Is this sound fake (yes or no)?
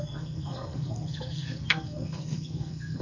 yes